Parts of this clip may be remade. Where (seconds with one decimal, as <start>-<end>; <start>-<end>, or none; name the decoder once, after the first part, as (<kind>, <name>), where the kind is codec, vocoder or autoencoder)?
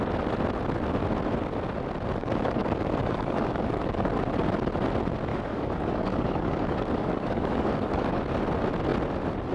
2.2-4.1 (codec, DAC); 5.3-8.2